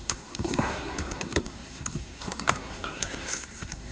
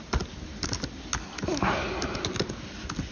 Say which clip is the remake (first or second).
first